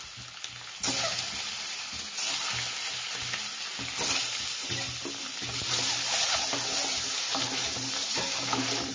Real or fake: real